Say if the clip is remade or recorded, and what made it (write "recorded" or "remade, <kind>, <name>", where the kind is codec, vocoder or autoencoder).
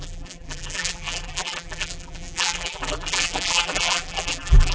remade, vocoder, BigVGAN v2